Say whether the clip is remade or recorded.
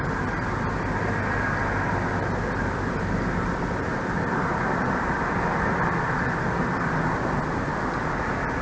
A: recorded